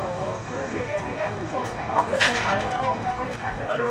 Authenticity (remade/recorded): remade